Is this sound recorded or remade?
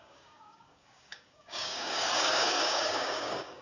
remade